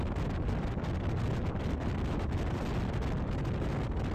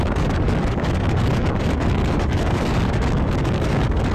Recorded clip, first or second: first